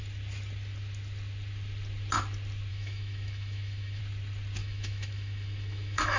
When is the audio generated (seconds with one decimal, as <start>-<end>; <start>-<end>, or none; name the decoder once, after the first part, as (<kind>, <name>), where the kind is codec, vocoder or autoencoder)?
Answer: 2.7-4.0 (autoencoder, DAC-VAE); 4.6-6.2